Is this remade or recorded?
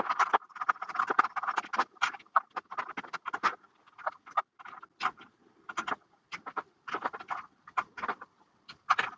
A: recorded